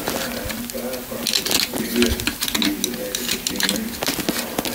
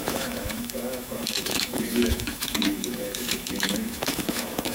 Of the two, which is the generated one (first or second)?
second